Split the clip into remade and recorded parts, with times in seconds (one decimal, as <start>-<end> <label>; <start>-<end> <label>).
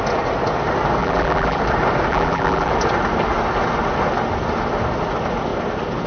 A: 0.0-1.0 recorded; 1.0-1.6 remade; 1.6-2.1 recorded; 2.1-2.7 remade; 2.7-6.1 recorded